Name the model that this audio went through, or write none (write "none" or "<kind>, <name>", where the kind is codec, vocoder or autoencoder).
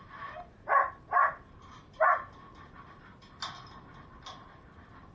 none